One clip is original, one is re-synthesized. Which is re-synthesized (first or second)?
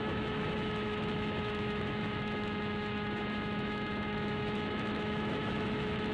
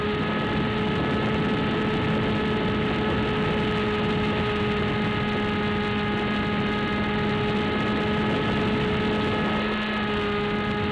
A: first